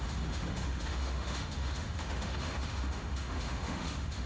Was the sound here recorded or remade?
remade